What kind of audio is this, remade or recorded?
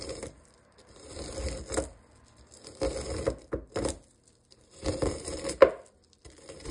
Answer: recorded